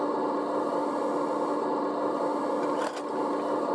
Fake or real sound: real